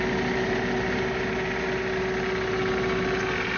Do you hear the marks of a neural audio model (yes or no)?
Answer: no